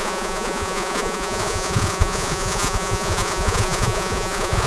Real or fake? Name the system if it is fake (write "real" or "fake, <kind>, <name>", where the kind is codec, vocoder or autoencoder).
fake, vocoder, Vocos